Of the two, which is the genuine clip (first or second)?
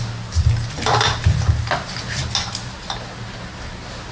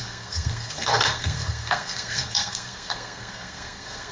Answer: first